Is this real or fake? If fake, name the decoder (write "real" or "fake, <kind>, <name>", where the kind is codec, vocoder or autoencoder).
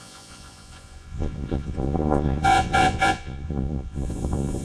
fake, vocoder, Vocos